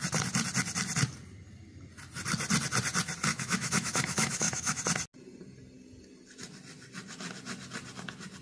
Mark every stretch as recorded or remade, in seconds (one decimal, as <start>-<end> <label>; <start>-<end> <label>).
0.0-3.3 recorded; 3.3-4.8 remade; 4.8-8.4 recorded